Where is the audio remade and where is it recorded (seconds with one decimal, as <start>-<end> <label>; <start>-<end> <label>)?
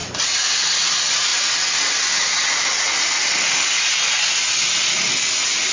0.0-5.7 recorded